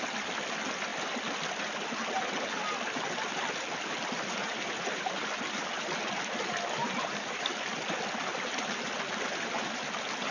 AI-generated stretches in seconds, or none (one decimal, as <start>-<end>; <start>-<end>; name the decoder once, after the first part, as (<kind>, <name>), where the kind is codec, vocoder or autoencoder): 4.4-5.1 (vocoder, BigVGAN v2); 6.8-7.5